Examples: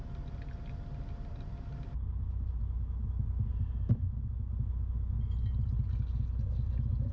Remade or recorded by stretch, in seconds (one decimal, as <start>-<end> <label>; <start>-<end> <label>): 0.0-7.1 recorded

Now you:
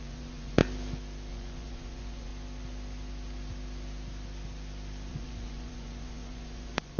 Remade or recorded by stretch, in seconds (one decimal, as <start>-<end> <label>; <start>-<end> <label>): 0.0-0.6 remade; 0.6-1.3 recorded; 1.3-2.3 remade; 2.3-5.1 recorded; 5.1-7.0 remade

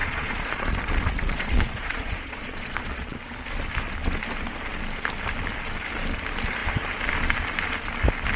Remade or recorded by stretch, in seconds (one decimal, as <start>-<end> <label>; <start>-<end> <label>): 0.0-3.2 remade; 3.2-8.4 recorded